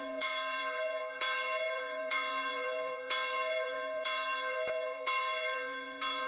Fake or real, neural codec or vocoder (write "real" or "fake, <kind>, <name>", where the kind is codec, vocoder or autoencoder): fake, vocoder, Vocos